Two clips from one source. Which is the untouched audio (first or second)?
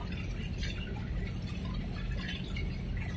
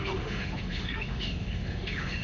first